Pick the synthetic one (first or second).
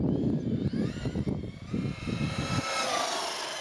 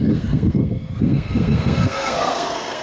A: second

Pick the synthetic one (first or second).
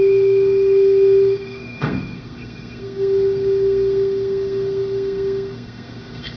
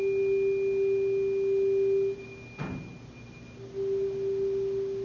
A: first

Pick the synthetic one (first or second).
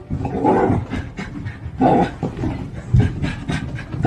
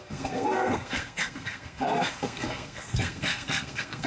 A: second